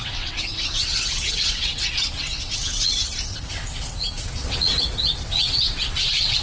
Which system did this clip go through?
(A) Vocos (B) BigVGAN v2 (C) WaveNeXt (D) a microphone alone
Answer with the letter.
C